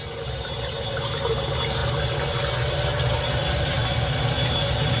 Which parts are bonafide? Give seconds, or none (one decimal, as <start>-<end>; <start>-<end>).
0.0-5.0